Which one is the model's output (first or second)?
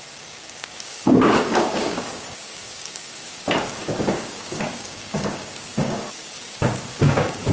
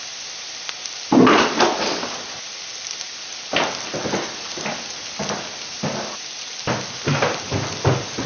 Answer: first